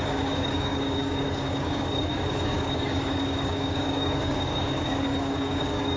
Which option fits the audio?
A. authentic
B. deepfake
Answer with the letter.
B